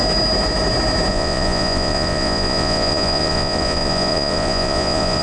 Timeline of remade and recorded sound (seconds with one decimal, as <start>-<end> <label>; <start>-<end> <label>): 0.0-1.1 recorded; 1.1-5.2 remade